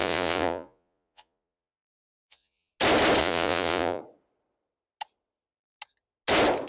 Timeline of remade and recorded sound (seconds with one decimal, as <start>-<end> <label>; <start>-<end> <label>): 0.0-2.7 remade; 2.7-3.2 recorded; 3.2-4.0 remade; 4.0-6.7 recorded